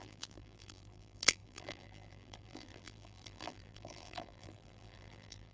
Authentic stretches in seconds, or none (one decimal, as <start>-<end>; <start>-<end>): none